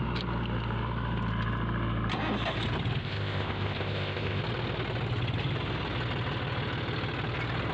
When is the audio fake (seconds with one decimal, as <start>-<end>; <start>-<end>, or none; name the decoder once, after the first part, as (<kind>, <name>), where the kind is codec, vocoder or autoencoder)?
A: 3.0-4.4 (codec, ZipCodec)